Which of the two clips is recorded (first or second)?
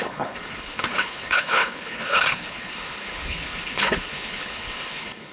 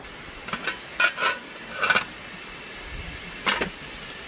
second